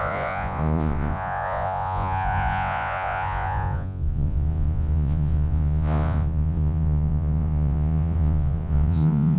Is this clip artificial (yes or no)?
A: yes